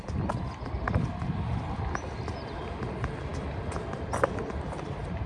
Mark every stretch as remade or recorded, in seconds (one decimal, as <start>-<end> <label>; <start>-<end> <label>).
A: 0.0-5.3 recorded